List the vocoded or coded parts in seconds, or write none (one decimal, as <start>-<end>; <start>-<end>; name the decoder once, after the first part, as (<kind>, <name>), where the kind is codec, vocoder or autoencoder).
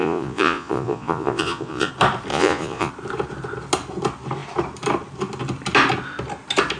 0.0-1.9 (vocoder, Vocos); 2.3-2.9